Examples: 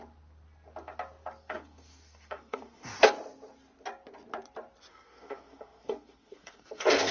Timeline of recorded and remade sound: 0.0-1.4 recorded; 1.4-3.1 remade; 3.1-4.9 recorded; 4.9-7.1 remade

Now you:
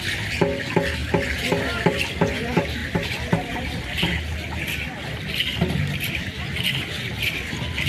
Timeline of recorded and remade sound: 0.0-7.9 recorded

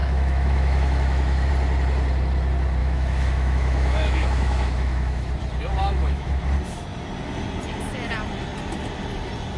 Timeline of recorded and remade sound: 0.0-1.5 remade; 1.5-2.8 recorded; 2.8-5.3 remade; 5.3-5.8 recorded; 5.8-6.4 remade; 6.4-9.6 recorded

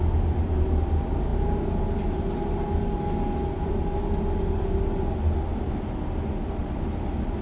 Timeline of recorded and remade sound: 0.0-7.4 recorded